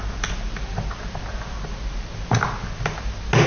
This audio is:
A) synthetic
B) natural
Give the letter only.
B